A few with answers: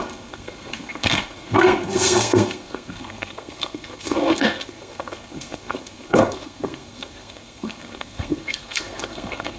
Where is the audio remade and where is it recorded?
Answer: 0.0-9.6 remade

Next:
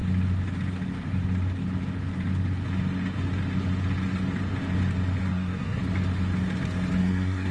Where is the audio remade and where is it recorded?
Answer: 0.0-5.2 recorded; 5.2-5.8 remade; 5.8-7.0 recorded; 7.0-7.5 remade

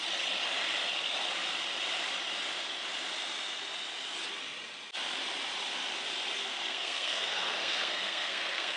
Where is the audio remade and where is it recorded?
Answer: 0.0-6.4 recorded; 6.4-8.8 remade

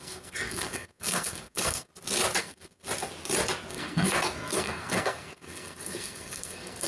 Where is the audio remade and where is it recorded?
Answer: 0.0-1.9 remade; 1.9-2.4 recorded; 2.4-2.8 remade; 2.8-3.7 recorded; 3.7-6.9 remade

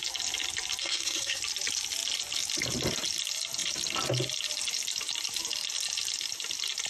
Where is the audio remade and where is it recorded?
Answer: 0.0-0.8 recorded; 0.8-1.4 remade; 1.4-6.9 recorded

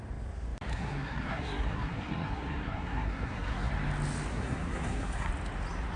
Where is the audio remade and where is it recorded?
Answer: 0.0-0.7 recorded; 0.7-3.7 remade; 3.7-4.3 recorded; 4.3-5.3 remade; 5.3-6.0 recorded